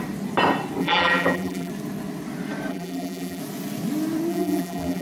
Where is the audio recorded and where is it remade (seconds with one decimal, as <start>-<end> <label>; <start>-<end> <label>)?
0.0-0.8 recorded; 0.8-1.7 remade; 1.7-2.7 recorded; 2.7-3.4 remade; 3.4-4.3 recorded; 4.3-5.0 remade